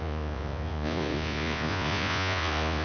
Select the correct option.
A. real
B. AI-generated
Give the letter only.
B